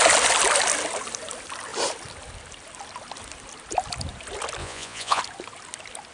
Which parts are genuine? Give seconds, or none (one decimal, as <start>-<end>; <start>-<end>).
0.0-4.6; 5.2-6.1